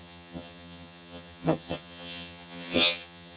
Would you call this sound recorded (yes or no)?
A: no